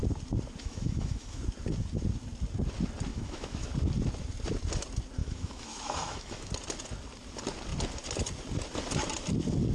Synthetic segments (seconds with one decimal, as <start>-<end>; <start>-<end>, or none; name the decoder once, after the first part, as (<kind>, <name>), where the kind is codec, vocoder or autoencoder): 0.6-1.4 (autoencoder, DAC-VAE); 3.1-3.7; 5.2-6.5